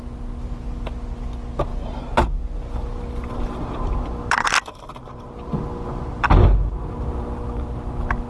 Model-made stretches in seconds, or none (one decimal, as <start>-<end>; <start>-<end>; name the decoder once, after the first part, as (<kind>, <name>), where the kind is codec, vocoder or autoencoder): none